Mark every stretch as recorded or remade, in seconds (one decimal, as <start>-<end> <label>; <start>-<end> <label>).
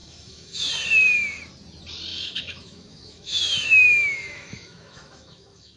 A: 0.0-0.7 remade; 0.7-2.1 recorded; 2.1-5.8 remade